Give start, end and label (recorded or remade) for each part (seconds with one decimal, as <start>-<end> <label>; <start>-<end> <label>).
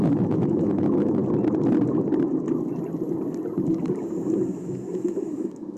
0.0-1.2 remade; 1.2-4.6 recorded; 4.6-5.8 remade